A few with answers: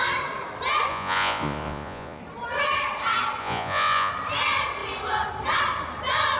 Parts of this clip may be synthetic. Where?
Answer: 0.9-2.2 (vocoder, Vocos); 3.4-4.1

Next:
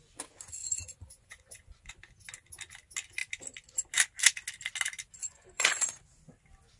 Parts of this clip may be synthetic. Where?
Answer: 0.6-1.9 (vocoder, Vocos); 5.2-6.0

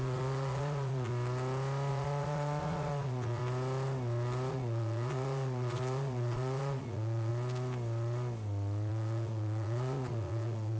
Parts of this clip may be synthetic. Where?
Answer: 0.0-1.1 (vocoder, Vocos); 1.9-3.4; 4.5-7.3; 8.9-10.8

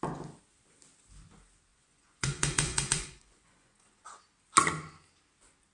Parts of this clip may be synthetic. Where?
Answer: 1.7-4.1 (vocoder, Vocos)

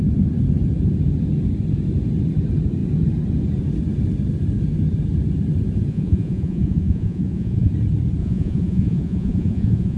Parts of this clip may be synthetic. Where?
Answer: 5.9-7.7 (vocoder, Vocos); 8.2-10.0

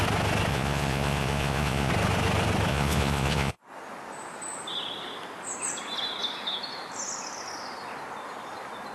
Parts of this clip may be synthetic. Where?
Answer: 0.5-1.9 (vocoder, Vocos); 2.7-3.6